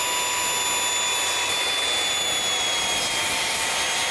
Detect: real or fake real